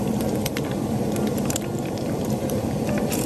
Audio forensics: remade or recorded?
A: remade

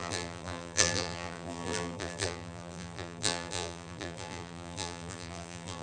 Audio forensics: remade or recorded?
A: remade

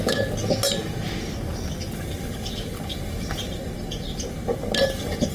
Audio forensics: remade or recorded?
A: recorded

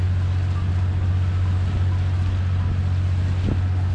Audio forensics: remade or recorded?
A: recorded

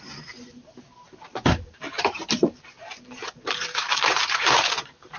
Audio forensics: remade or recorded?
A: remade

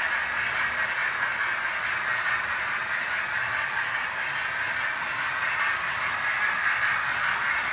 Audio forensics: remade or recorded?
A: recorded